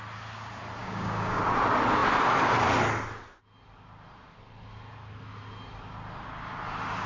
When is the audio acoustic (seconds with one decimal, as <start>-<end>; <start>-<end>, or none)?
0.0-0.8; 1.4-7.1